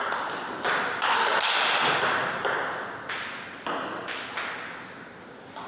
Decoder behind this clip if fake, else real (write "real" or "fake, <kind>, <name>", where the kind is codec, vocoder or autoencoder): real